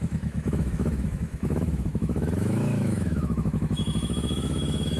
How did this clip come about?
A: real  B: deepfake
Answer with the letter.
B